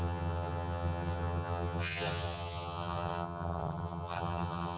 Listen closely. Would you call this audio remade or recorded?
remade